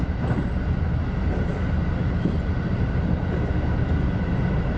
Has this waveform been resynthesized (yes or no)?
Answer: no